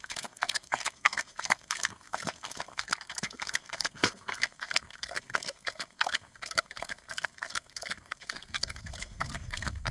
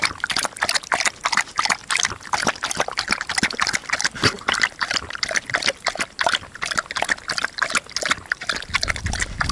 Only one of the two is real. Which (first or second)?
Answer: second